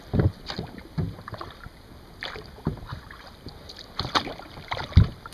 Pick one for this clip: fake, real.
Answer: fake